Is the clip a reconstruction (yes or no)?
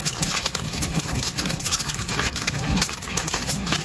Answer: yes